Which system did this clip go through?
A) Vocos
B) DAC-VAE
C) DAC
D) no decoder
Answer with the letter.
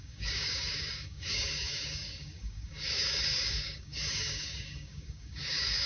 C